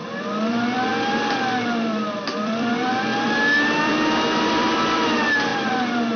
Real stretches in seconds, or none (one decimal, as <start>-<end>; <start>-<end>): 3.1-3.8